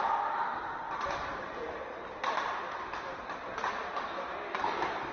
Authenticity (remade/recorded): recorded